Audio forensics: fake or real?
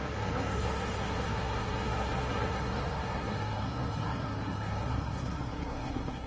fake